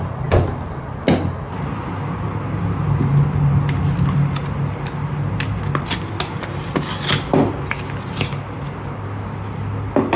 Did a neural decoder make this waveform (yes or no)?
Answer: no